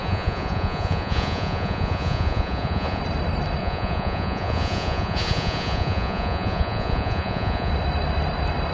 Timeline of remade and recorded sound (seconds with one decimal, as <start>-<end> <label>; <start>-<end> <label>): 0.0-3.0 remade; 3.0-3.6 recorded; 3.6-7.7 remade; 7.7-8.7 recorded